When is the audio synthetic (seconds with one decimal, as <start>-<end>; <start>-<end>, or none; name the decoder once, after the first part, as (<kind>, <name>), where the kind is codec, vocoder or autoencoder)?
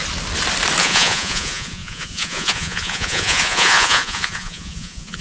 0.8-5.2 (vocoder, Vocos)